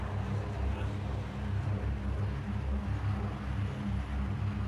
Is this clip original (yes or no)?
yes